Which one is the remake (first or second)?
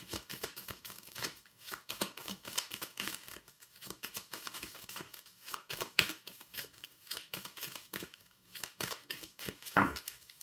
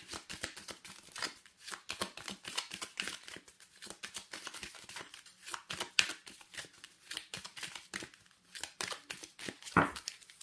first